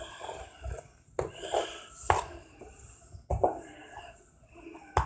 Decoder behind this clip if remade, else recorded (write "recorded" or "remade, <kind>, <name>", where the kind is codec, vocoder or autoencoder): recorded